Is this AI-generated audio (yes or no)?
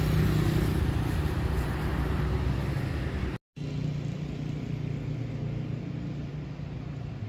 no